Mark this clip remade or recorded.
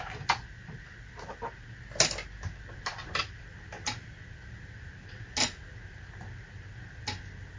recorded